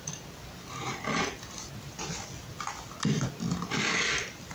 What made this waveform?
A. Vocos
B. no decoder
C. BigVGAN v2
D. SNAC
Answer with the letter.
B